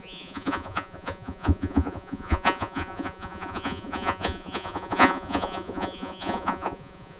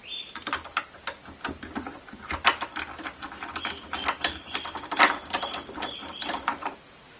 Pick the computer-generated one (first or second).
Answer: first